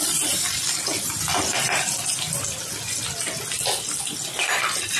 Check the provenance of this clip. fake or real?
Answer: real